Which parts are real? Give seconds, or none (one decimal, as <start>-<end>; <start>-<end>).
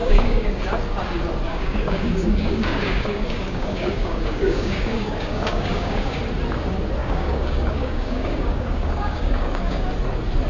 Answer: 0.6-1.5; 6.2-7.0; 9.9-10.5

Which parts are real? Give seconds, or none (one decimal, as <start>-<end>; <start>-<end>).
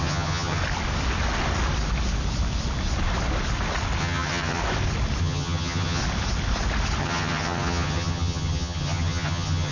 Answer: 0.6-4.0; 4.6-5.2; 6.0-7.0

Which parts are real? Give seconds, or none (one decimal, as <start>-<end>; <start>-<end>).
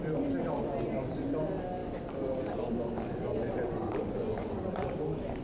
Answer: 0.0-4.0; 4.9-5.4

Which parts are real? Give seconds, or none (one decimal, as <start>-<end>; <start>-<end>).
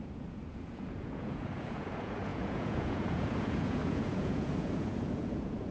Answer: none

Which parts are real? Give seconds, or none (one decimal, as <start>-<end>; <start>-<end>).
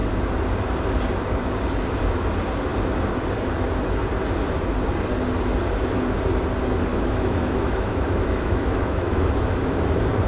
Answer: 0.0-6.9; 9.7-10.3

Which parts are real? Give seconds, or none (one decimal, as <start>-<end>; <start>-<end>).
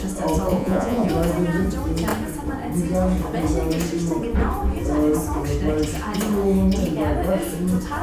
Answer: 0.0-0.5; 1.1-8.0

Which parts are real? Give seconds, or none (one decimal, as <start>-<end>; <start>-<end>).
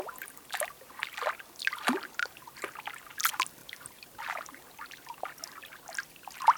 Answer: 0.0-2.2; 3.0-3.6; 4.8-6.6